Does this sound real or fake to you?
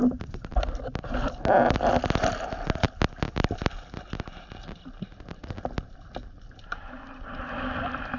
real